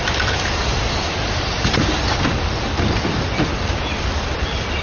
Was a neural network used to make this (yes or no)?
no